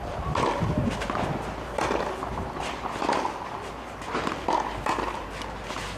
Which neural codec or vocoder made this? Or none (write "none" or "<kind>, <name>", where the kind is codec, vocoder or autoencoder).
none